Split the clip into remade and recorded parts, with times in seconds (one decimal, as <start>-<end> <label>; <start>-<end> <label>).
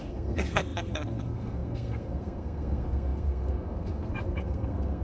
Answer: 0.0-5.0 remade